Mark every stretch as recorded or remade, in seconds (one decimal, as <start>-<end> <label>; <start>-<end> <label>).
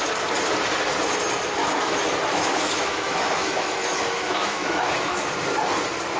0.0-1.6 recorded; 1.6-5.3 remade; 5.3-6.2 recorded